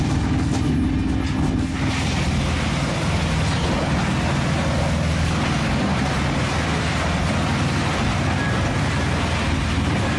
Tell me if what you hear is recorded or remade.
recorded